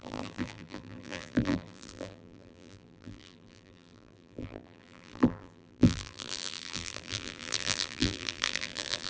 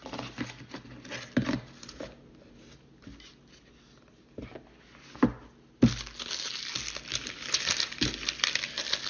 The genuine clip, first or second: second